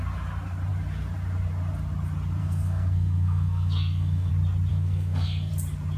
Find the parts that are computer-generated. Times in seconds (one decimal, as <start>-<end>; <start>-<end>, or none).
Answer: 2.4-4.3; 4.7-5.5